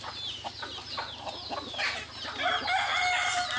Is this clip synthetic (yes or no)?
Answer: no